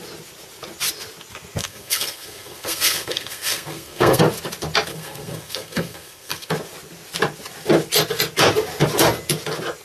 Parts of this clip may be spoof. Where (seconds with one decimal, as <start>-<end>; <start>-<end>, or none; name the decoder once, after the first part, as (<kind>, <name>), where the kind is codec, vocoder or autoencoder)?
1.6-4.2 (codec, SNAC); 4.9-6.5

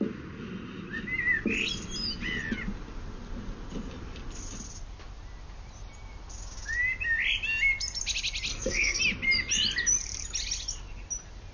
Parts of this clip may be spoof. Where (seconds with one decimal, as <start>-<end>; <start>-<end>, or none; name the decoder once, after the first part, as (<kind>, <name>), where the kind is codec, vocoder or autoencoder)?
8.5-9.0 (codec, SNAC)

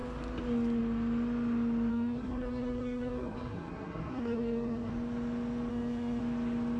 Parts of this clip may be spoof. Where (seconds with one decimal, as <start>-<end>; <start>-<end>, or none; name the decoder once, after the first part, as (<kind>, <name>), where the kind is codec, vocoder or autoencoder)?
1.9-4.9 (codec, SNAC); 5.7-6.2

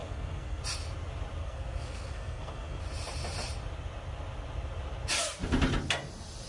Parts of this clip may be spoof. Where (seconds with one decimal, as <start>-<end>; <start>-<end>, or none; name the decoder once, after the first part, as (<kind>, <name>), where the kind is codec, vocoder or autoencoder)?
0.0-0.6 (codec, SNAC); 1.4-2.8

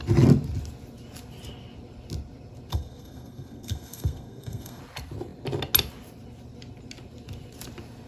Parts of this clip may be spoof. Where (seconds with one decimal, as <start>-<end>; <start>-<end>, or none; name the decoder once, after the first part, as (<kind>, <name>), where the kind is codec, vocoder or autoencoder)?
2.7-4.8 (codec, SNAC)

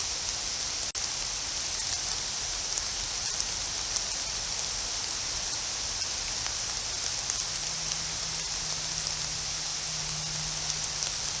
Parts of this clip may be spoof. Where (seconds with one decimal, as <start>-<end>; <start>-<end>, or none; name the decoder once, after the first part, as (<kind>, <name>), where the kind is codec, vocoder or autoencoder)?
none

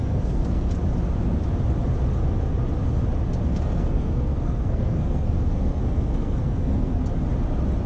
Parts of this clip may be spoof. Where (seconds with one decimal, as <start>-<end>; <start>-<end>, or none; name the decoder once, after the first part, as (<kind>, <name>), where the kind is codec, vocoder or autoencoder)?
0.0-0.7 (codec, SNAC); 3.5-7.0